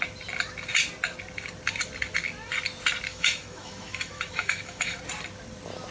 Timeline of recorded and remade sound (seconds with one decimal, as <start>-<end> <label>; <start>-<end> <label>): 0.0-3.1 recorded; 3.1-5.0 remade; 5.0-5.9 recorded